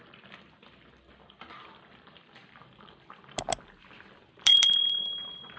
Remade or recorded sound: remade